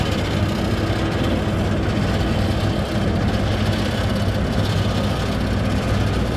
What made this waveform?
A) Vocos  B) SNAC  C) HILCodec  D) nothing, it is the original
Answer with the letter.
D